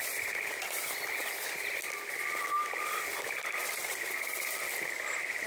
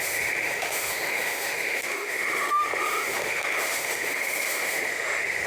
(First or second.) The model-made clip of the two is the second